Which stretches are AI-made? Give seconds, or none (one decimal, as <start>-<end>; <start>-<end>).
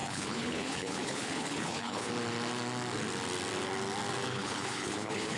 0.0-2.1; 4.3-5.4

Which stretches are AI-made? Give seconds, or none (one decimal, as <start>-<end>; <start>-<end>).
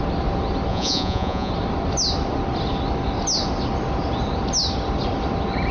0.7-1.5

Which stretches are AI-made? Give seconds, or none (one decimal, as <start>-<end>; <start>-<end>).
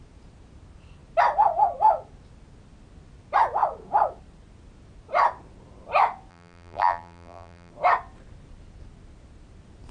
6.3-7.7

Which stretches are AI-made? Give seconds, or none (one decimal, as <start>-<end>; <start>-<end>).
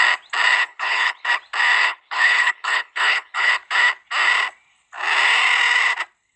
0.6-1.3; 1.8-3.5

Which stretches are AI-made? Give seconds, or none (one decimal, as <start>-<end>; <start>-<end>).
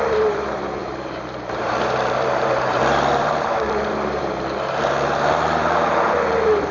0.0-6.7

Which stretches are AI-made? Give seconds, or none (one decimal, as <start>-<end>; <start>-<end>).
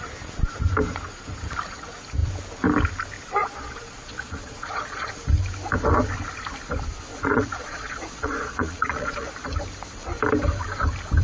3.4-5.1; 7.1-9.3